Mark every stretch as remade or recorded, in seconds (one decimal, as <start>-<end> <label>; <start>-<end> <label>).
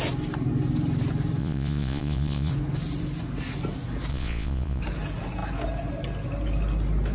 0.0-1.4 recorded; 1.4-2.5 remade; 2.5-4.1 recorded; 4.1-4.8 remade; 4.8-7.1 recorded